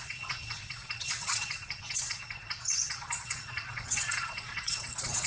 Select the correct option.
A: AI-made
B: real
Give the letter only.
A